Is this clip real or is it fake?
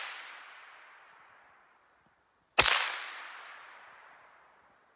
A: real